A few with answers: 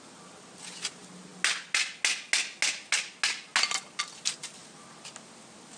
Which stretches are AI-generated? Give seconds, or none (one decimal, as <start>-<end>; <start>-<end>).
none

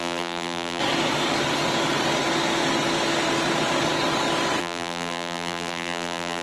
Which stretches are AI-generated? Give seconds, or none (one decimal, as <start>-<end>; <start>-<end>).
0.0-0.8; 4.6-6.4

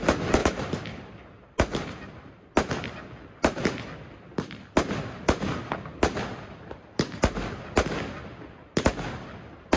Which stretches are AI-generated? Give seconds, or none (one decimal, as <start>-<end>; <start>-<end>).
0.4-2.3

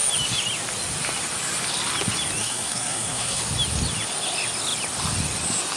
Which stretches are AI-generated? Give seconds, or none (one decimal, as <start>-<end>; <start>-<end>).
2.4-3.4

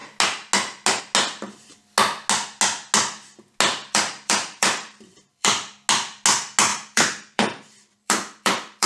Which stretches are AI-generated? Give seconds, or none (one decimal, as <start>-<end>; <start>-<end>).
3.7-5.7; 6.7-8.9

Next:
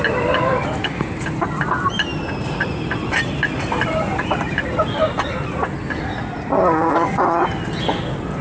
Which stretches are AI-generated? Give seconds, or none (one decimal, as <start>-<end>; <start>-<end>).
2.1-3.1; 4.1-4.6